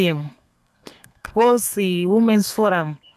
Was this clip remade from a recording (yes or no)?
yes